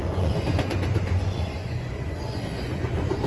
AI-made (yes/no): yes